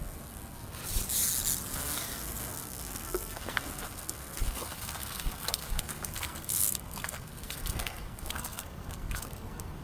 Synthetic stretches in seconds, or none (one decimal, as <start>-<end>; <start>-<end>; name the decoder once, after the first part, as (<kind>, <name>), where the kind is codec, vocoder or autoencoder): 0.0-0.8 (codec, SNAC); 1.7-9.8

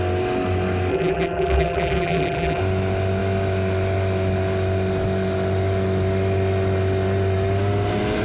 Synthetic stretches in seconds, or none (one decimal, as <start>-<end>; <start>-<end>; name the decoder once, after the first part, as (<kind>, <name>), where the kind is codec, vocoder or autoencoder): 0.9-2.6 (vocoder, BigVGAN v2)

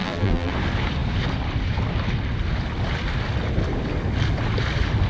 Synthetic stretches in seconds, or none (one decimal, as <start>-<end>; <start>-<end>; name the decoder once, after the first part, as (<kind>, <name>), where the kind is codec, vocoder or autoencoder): 0.0-0.5 (vocoder, BigVGAN v2)

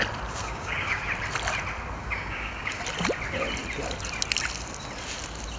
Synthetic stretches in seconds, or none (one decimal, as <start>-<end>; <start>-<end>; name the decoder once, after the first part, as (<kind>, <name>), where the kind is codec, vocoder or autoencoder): 0.4-1.0 (codec, DAC); 2.0-2.8

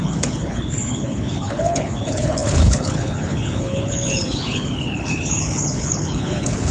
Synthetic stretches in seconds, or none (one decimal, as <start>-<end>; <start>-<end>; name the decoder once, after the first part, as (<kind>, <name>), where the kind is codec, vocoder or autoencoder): 0.0-6.7 (codec, HILCodec)

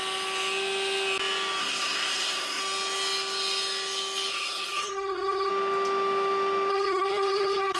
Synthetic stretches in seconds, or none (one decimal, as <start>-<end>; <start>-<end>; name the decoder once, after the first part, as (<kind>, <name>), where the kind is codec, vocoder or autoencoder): 1.6-2.6 (codec, SNAC); 4.3-5.5; 6.7-7.8

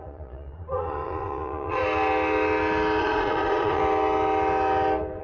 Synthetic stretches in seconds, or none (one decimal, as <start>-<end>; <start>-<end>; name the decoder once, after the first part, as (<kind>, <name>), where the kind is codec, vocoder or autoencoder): 0.0-1.8 (vocoder, Vocos); 3.0-3.8

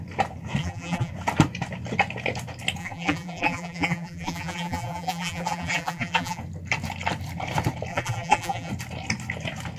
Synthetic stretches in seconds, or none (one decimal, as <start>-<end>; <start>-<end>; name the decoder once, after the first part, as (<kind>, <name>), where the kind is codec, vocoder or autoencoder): 0.6-1.1 (vocoder, BigVGAN v2); 2.8-6.4; 7.9-8.7